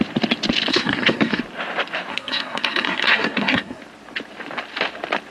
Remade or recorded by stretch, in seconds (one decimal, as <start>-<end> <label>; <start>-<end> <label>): 0.0-0.7 recorded; 0.7-1.4 remade; 1.4-2.1 recorded; 2.1-3.8 remade; 3.8-5.3 recorded